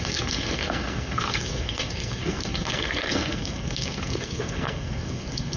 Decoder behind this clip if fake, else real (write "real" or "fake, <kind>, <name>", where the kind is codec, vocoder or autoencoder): fake, codec, SNAC